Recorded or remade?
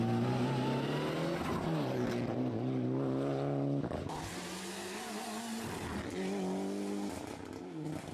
recorded